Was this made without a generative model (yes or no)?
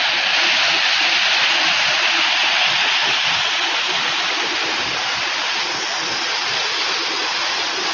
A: yes